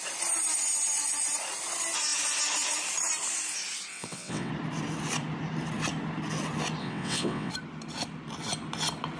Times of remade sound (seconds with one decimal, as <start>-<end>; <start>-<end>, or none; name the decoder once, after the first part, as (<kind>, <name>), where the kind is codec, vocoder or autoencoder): 3.9-4.5 (vocoder, WaveNeXt); 6.8-7.5